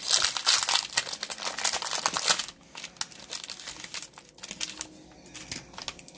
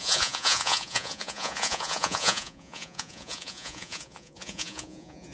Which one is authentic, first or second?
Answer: first